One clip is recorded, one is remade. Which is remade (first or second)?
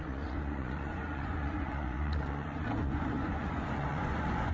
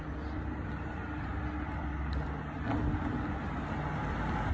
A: first